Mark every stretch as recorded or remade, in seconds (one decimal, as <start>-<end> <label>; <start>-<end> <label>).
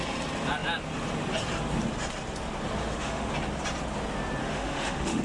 0.0-2.8 recorded; 2.8-3.3 remade; 3.3-4.4 recorded; 4.4-5.2 remade